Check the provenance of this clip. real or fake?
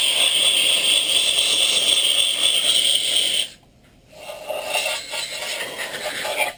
real